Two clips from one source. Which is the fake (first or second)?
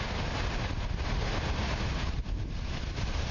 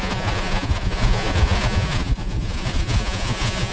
second